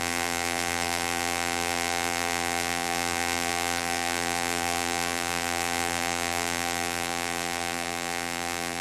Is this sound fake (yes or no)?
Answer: yes